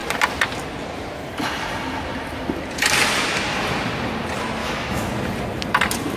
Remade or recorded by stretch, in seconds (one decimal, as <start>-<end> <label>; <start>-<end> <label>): 0.0-4.6 recorded; 4.6-5.1 remade; 5.1-6.2 recorded